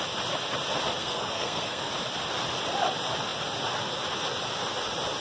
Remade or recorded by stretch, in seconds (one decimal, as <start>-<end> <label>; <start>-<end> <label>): 0.0-1.0 recorded; 1.0-1.9 remade; 1.9-5.2 recorded